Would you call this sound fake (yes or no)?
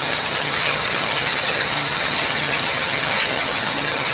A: yes